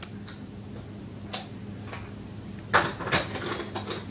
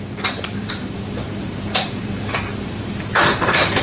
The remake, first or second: second